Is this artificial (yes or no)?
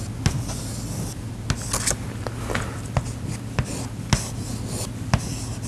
no